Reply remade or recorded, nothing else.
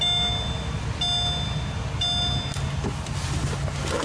recorded